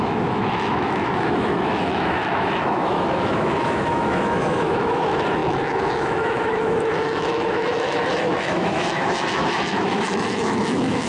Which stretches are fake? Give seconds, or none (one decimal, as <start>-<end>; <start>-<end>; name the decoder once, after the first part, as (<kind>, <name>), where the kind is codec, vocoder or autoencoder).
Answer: 0.0-11.1 (autoencoder, DAC-VAE)